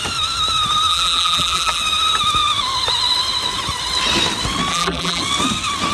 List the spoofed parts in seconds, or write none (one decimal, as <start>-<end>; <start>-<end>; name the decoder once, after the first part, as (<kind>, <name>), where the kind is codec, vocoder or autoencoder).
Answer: 0.9-1.8 (vocoder, BigVGAN v2); 4.7-5.2